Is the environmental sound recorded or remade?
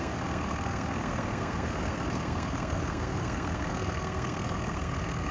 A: remade